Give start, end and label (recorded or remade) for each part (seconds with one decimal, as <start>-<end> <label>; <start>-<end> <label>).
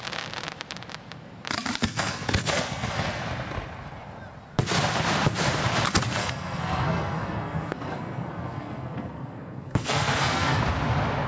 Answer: 0.0-1.8 recorded; 1.8-3.2 remade; 3.2-6.2 recorded; 6.2-10.6 remade; 10.6-11.3 recorded